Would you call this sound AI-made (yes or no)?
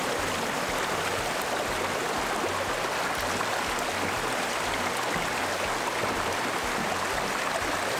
no